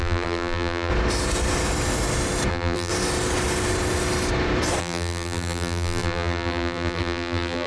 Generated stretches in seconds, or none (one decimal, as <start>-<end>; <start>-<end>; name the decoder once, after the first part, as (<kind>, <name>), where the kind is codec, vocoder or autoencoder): 0.0-0.9 (vocoder, BigVGAN v2); 2.5-2.9; 4.8-7.7